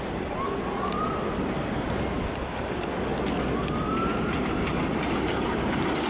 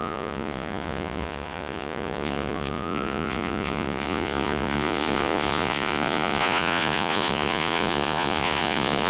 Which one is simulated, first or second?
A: second